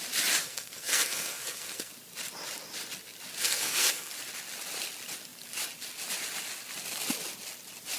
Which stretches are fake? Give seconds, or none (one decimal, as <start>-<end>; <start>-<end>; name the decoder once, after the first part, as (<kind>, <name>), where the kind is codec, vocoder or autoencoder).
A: 0.4-1.9 (codec, SNAC); 3.4-4.1

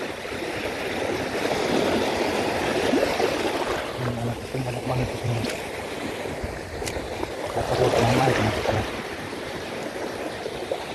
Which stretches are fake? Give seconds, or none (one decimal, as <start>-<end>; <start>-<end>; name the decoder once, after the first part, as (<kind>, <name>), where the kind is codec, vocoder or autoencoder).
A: 0.0-3.0 (vocoder, BigVGAN v2); 5.1-10.9

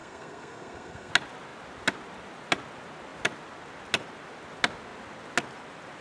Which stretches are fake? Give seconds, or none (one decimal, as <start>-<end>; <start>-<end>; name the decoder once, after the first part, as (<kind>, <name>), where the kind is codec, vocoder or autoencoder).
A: 0.0-1.1 (codec, SNAC)

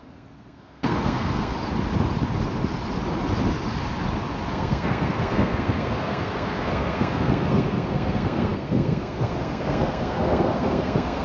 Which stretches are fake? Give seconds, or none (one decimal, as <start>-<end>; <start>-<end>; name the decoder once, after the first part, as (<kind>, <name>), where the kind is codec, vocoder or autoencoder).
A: 0.0-1.5 (codec, SNAC); 4.5-11.2

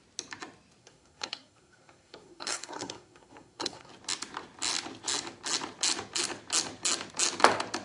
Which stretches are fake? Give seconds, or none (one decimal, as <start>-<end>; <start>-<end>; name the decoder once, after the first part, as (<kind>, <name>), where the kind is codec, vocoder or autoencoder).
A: 0.8-3.9 (codec, SNAC)

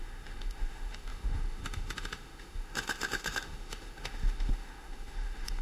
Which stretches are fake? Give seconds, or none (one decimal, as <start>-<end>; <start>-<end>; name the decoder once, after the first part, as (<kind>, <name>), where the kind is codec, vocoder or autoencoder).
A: 0.0-5.6 (autoencoder, DAC-VAE)